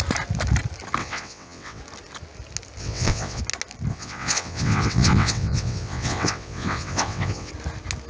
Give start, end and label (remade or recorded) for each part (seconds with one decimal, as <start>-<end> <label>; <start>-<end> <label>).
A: 0.0-1.0 recorded; 1.0-1.8 remade; 1.8-2.8 recorded; 2.8-3.4 remade; 3.4-3.9 recorded; 3.9-7.5 remade; 7.5-8.1 recorded